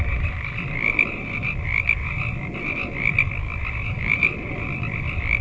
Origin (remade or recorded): recorded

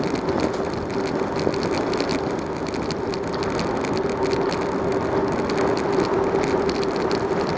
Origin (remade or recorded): recorded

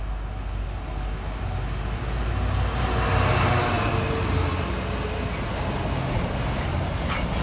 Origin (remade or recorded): recorded